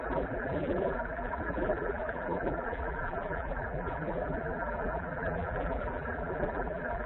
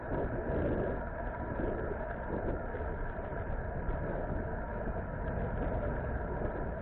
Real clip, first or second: second